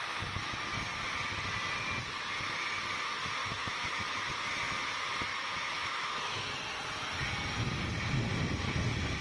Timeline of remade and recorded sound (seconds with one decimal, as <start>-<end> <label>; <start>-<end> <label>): 0.0-3.4 recorded; 3.4-4.2 remade; 4.2-5.3 recorded; 5.3-6.5 remade; 6.5-9.2 recorded